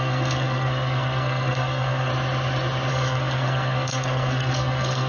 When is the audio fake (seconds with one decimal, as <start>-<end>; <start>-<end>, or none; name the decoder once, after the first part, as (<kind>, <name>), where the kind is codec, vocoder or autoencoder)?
0.0-2.1 (codec, SNAC); 2.9-5.1